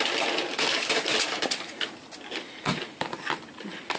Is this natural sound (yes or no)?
yes